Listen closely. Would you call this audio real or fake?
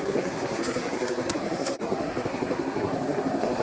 fake